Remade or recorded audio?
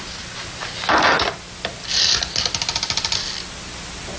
recorded